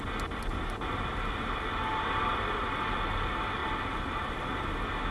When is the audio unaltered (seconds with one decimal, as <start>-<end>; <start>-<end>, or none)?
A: 0.0-5.1